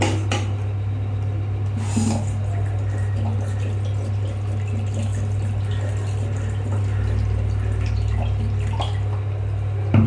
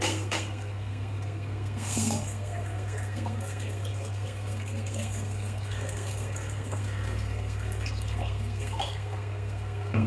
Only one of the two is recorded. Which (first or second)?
first